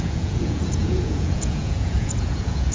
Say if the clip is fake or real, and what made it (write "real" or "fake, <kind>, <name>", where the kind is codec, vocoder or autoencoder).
fake, vocoder, Vocos